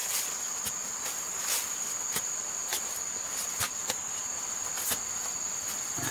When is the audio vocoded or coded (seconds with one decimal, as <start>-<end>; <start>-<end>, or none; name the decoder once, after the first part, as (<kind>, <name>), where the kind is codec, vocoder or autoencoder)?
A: none